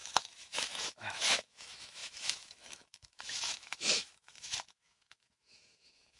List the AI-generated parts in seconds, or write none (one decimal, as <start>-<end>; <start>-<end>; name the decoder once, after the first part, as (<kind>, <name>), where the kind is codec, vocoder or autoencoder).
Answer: 0.0-6.2 (autoencoder, DAC-VAE)